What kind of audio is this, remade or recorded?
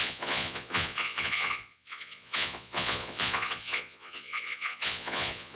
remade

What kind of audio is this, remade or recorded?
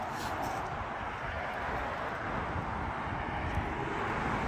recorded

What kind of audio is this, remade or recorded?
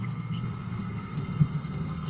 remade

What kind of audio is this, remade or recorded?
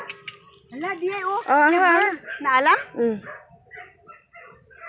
recorded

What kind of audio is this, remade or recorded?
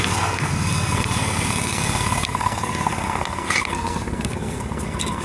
remade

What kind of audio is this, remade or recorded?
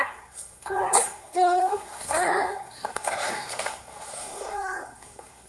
remade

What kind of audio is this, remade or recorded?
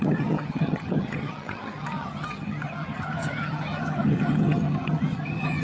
remade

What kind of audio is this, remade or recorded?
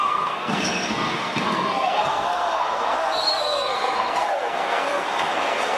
remade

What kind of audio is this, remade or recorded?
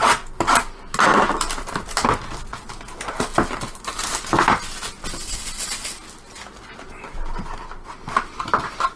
recorded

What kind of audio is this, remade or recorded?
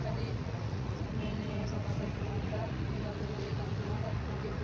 remade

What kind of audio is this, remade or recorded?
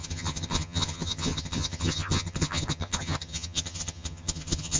remade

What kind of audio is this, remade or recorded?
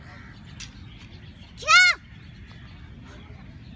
recorded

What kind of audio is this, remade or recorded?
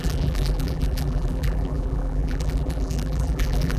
remade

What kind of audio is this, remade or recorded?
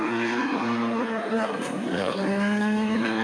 remade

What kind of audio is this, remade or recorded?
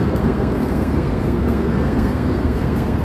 remade